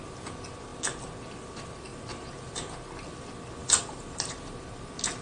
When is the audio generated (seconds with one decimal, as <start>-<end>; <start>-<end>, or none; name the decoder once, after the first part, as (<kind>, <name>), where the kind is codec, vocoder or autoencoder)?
1.9-2.7 (vocoder, BigVGAN v2); 3.6-4.4